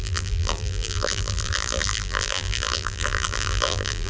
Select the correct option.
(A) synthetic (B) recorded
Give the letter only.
A